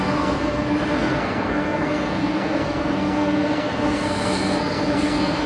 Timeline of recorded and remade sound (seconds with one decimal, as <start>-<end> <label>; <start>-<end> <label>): 0.0-5.5 remade